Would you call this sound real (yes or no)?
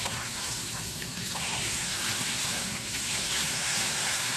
no